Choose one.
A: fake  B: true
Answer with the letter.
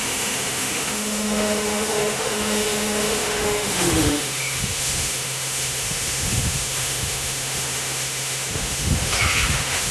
A